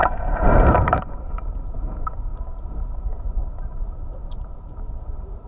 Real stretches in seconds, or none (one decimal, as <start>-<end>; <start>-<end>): 2.3-3.0